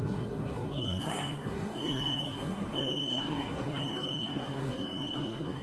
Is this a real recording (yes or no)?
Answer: no